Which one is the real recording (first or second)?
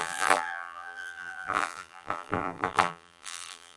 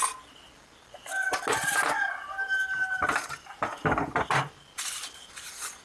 second